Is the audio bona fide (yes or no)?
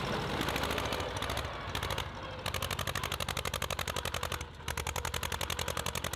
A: yes